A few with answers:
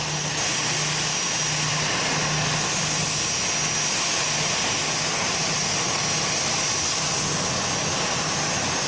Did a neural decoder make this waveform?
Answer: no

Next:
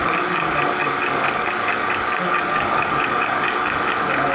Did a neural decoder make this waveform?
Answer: yes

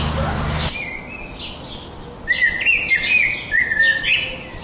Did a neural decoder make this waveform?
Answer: no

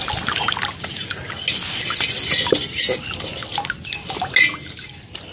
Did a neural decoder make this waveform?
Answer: no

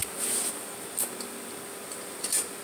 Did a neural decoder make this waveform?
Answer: no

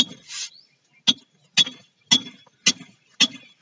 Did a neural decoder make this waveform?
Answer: no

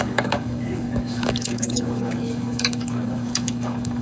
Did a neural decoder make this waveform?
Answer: yes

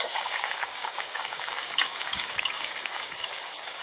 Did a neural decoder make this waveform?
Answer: yes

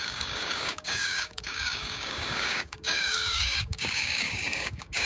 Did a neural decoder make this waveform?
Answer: yes